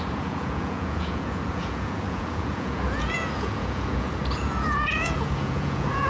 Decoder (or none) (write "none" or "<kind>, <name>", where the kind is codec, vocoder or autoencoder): vocoder, Vocos